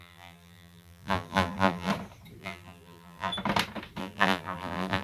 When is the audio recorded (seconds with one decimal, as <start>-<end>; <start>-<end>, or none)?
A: 1.9-2.4; 3.3-4.0